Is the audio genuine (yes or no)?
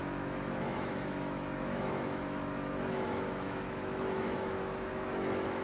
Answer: no